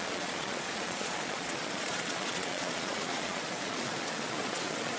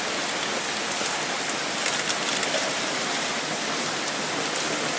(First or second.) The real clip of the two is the second